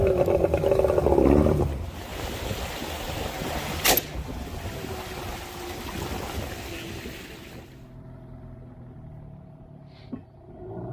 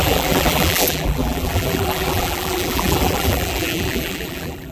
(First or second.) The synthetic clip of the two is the second